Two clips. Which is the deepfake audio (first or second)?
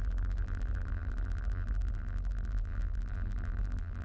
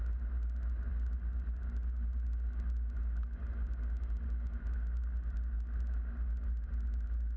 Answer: first